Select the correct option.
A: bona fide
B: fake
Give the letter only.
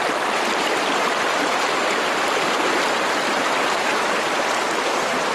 B